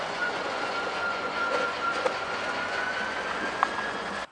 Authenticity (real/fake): fake